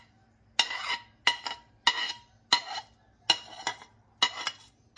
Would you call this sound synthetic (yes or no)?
no